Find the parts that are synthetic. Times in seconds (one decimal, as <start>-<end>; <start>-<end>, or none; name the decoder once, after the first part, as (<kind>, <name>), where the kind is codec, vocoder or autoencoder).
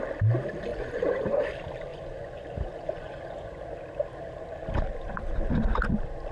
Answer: 0.7-1.5 (vocoder, Vocos); 1.9-3.6